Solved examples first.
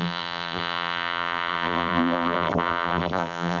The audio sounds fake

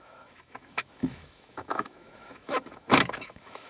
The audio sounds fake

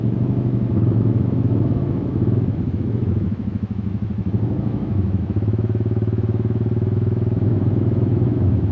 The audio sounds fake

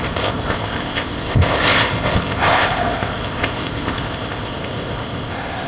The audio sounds fake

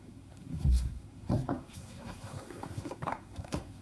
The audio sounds fake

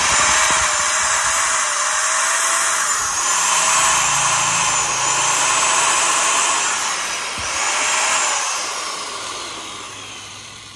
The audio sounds real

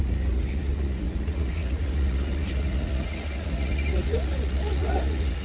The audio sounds fake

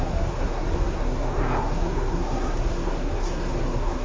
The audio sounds fake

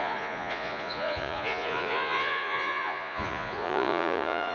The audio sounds fake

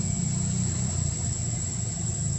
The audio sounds real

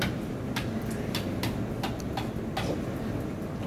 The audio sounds real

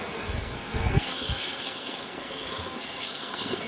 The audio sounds fake